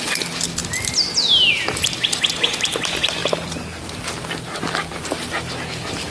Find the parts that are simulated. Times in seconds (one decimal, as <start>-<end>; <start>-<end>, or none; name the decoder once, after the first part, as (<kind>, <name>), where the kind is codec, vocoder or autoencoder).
none